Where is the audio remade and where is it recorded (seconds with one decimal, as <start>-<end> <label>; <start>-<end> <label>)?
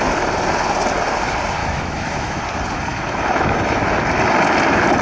0.0-1.6 recorded; 1.6-2.4 remade; 2.4-2.9 recorded; 2.9-3.8 remade; 3.8-5.0 recorded